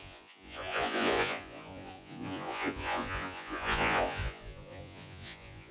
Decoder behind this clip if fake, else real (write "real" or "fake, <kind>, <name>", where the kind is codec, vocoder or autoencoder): fake, vocoder, Vocos